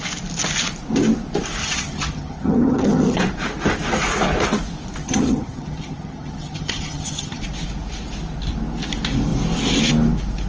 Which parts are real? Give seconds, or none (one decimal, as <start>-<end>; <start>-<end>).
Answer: 0.0-1.6; 3.2-5.0; 7.4-10.5